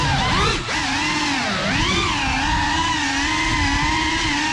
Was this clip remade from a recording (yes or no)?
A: no